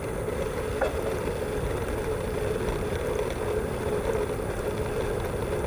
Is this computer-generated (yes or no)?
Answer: no